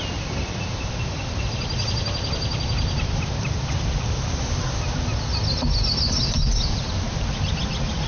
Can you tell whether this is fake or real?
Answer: real